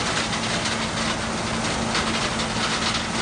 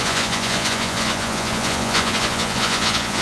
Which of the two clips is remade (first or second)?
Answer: second